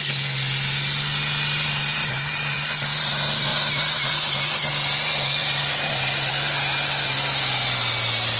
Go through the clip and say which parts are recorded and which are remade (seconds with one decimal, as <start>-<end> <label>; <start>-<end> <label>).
0.0-2.0 recorded; 2.0-3.1 remade; 3.1-3.5 recorded; 3.5-4.7 remade; 4.7-5.4 recorded; 5.4-6.3 remade; 6.3-8.4 recorded